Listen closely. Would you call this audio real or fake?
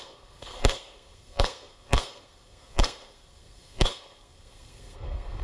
fake